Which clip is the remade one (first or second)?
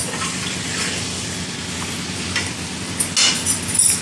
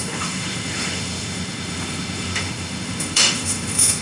second